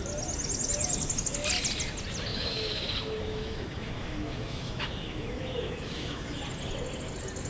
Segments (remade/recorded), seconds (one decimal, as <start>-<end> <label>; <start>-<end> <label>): 0.0-2.3 recorded; 2.3-6.4 remade; 6.4-7.5 recorded